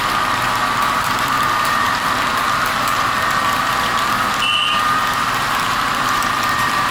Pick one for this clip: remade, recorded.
remade